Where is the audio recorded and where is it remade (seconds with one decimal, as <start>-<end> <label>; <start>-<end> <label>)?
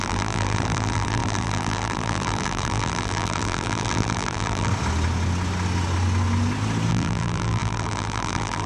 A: 0.0-4.7 remade; 4.7-6.9 recorded; 6.9-8.7 remade